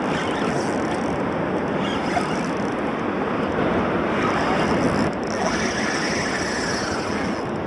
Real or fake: real